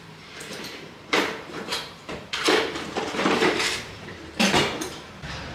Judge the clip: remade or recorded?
remade